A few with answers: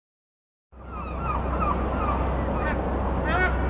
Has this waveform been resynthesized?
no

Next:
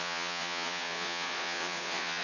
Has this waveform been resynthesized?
yes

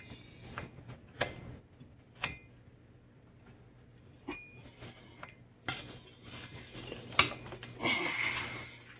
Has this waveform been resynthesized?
no